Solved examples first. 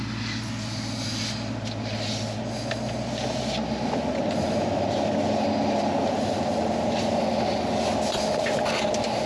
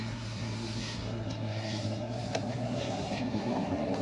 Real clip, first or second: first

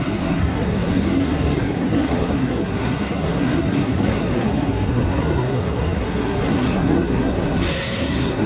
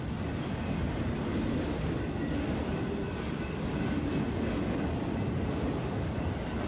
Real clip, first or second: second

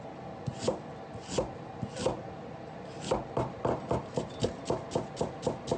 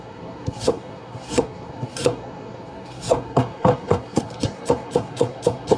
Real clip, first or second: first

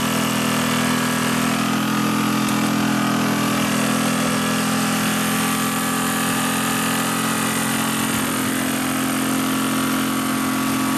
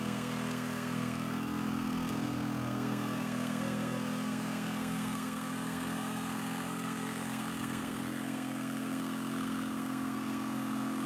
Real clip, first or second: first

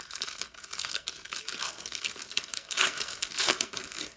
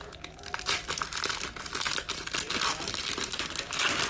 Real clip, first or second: second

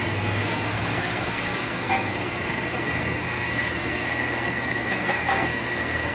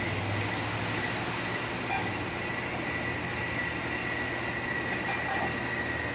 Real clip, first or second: second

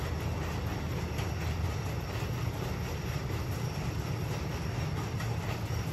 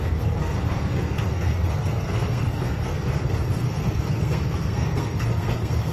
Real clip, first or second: first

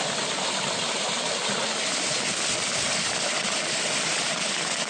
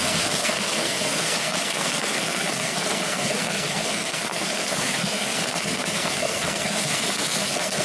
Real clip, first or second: first